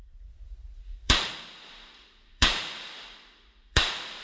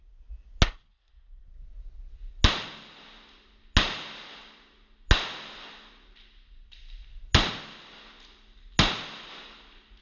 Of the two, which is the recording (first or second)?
second